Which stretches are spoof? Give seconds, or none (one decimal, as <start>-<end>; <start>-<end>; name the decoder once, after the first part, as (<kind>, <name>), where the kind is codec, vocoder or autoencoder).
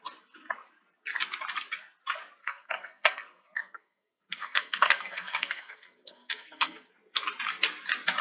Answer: 2.4-6.9 (codec, SNAC)